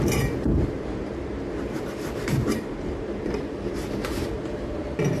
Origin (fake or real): fake